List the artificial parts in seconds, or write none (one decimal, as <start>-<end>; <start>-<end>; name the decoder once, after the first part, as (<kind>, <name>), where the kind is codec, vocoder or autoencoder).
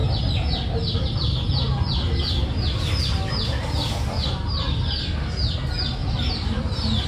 6.0-6.6 (vocoder, BigVGAN v2)